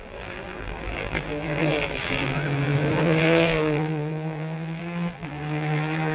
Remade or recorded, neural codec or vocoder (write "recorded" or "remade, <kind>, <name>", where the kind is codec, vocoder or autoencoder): remade, vocoder, BigVGAN v2